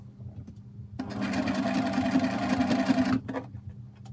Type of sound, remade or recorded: recorded